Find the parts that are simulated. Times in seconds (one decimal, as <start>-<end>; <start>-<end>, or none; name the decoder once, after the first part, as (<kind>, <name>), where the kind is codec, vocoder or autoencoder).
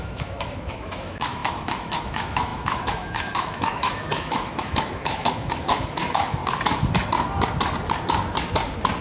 0.0-6.4 (autoencoder, DAC-VAE)